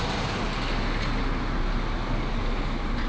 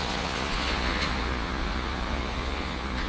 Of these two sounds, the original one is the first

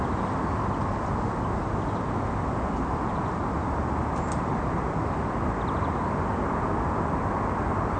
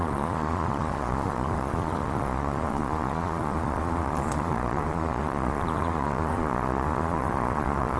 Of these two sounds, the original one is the first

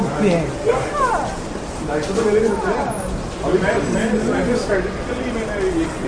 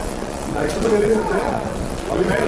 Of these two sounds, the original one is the first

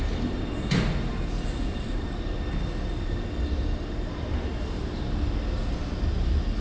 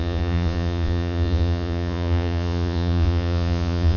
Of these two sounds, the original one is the first